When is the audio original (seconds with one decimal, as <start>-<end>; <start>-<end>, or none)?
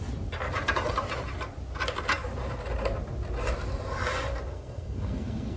0.0-4.5